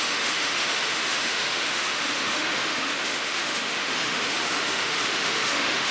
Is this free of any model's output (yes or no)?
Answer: no